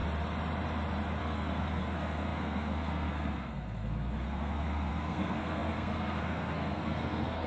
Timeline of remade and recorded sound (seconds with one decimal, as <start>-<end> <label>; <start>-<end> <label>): 0.0-1.2 recorded; 1.2-7.5 remade